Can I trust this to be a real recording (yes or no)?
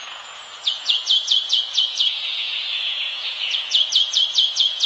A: no